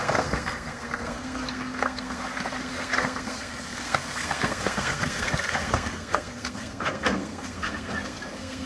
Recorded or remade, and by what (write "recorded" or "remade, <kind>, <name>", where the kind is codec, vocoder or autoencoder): remade, codec, SNAC